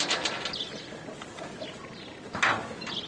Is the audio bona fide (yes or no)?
yes